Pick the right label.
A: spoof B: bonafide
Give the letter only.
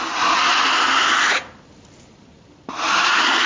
B